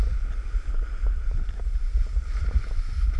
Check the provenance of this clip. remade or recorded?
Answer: remade